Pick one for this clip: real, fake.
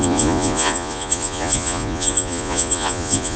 fake